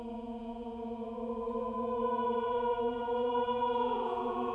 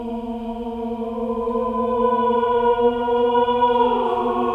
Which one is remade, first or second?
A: first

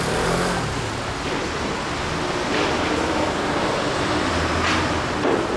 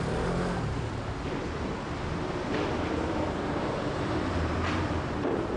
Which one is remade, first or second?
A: second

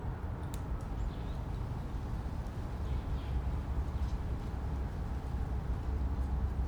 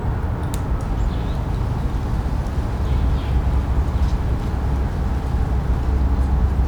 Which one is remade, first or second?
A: first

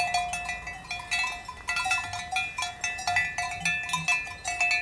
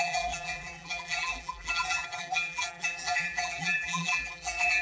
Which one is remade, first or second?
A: second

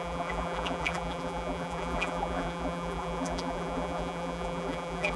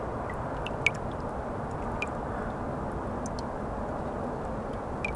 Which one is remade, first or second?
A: first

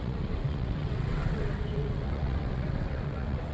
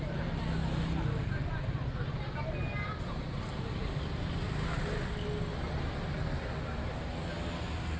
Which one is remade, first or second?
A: first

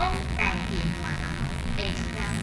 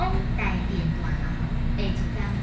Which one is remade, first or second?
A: first